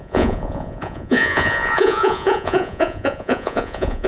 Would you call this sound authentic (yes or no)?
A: no